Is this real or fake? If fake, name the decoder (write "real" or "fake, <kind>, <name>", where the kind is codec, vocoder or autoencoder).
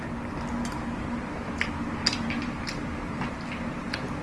real